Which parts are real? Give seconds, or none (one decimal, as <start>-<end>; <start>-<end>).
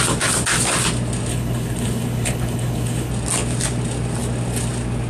0.0-1.3; 3.1-5.1